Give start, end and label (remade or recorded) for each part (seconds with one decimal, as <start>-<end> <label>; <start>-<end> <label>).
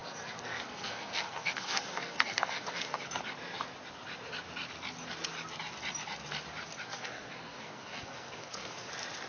0.0-3.1 remade; 3.1-6.9 recorded; 6.9-8.9 remade; 8.9-9.3 recorded